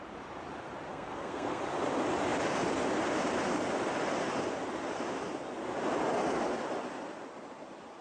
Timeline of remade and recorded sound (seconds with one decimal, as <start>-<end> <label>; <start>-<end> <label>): 0.0-0.9 recorded; 0.9-1.6 remade; 1.6-8.0 recorded